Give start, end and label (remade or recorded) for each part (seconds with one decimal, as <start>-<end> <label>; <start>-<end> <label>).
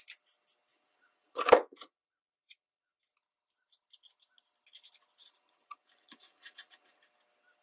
0.0-0.7 recorded; 0.7-3.0 remade; 3.0-5.2 recorded; 5.2-7.0 remade; 7.0-7.6 recorded